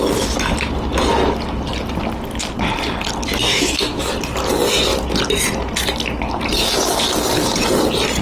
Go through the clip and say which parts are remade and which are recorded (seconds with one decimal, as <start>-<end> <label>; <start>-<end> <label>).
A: 0.0-3.5 recorded; 3.5-4.1 remade; 4.1-8.2 recorded